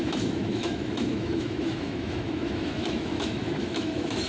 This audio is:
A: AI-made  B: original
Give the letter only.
A